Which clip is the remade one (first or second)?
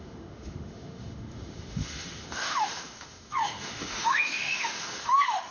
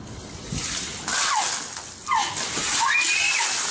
first